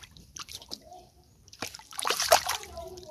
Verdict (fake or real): fake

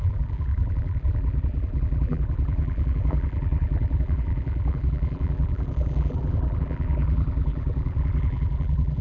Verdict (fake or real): fake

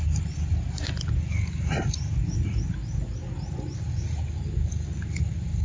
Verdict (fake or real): real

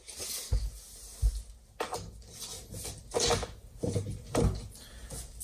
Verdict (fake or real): real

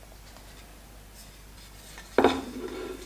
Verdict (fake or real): real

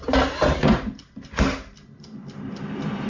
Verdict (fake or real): fake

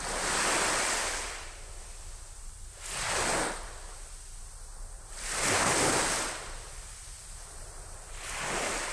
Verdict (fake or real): real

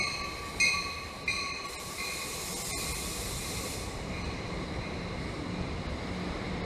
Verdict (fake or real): fake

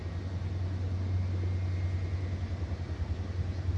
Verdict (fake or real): real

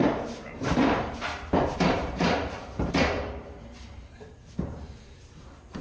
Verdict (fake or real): fake